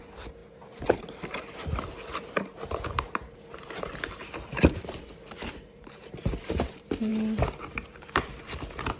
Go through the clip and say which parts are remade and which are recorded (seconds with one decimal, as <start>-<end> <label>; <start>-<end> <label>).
0.0-7.1 remade; 7.1-7.6 recorded; 7.6-9.0 remade